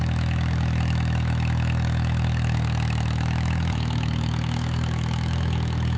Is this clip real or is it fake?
fake